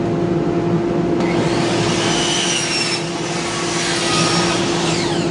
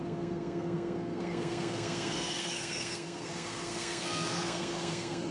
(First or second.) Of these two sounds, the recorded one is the first